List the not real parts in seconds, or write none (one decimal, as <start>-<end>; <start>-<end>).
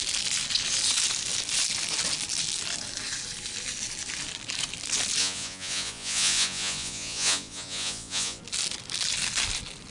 5.2-8.4